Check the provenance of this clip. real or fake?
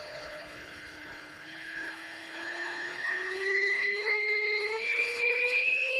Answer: fake